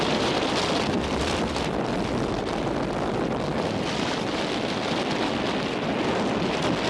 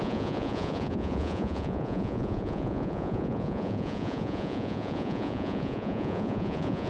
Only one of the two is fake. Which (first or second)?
second